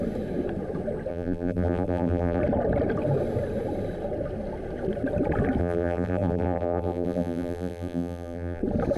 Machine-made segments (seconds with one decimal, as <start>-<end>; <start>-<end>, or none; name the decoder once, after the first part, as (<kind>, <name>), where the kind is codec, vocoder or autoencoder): 1.1-2.4 (vocoder, BigVGAN v2); 5.6-8.6